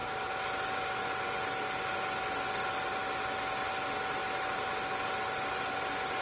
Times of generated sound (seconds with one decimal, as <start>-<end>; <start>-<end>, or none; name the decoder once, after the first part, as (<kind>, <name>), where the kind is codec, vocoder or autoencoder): none